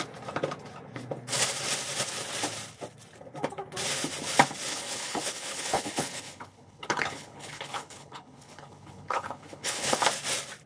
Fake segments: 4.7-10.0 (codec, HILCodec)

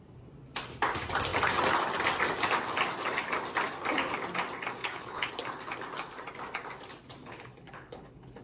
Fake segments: 4.8-5.3 (codec, HILCodec); 7.2-8.4

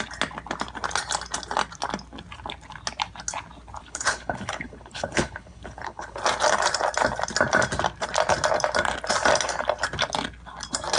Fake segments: 3.8-6.2 (codec, HILCodec)

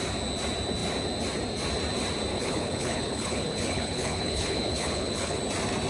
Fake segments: 2.3-5.4 (codec, HILCodec)

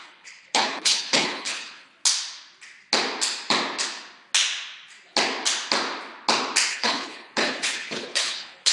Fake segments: 0.0-2.0 (codec, HILCodec); 6.7-8.7

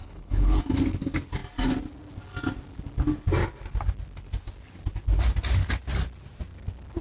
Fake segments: 0.0-0.6 (codec, HILCodec)